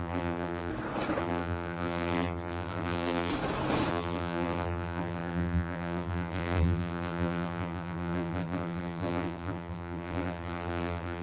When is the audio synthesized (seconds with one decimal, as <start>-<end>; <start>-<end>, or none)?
0.0-0.7; 1.2-3.3; 3.9-11.2